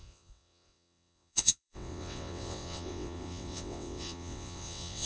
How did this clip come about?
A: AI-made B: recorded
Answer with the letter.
A